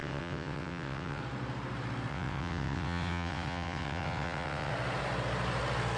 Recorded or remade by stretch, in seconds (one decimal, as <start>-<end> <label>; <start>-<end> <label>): 0.0-1.2 remade; 1.2-2.1 recorded; 2.1-4.7 remade; 4.7-6.0 recorded